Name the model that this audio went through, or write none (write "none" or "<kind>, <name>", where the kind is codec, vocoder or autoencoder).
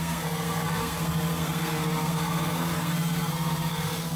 codec, SNAC